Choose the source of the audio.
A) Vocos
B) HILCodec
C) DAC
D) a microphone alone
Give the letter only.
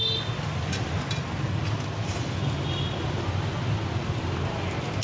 D